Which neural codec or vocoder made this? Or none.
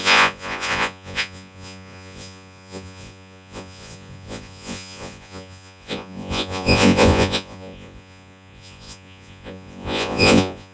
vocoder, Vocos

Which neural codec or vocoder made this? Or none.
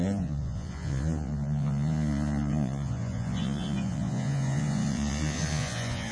vocoder, Vocos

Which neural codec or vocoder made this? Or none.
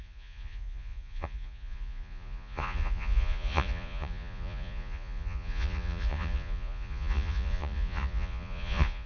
vocoder, Vocos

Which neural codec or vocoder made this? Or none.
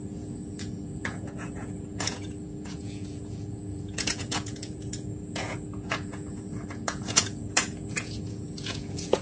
vocoder, Vocos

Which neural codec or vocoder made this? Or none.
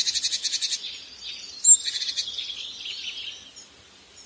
none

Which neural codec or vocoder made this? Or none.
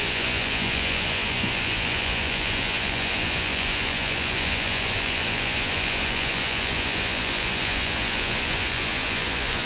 vocoder, Vocos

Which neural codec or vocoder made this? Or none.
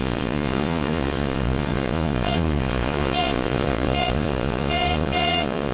vocoder, Vocos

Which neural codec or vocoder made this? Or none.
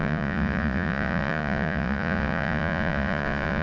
vocoder, Vocos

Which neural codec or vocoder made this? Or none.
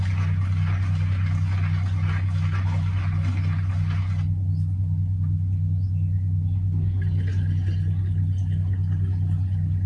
none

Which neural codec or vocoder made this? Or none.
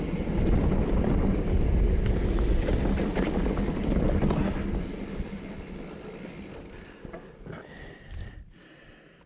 none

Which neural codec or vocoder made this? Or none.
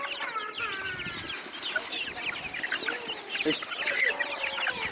none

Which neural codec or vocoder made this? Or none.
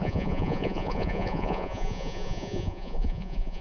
vocoder, Vocos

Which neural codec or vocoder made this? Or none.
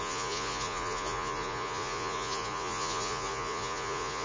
vocoder, Vocos